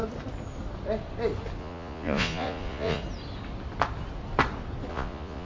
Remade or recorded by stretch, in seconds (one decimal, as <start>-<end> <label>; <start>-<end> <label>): 0.0-1.6 recorded; 1.6-3.0 remade; 3.0-4.9 recorded; 4.9-5.5 remade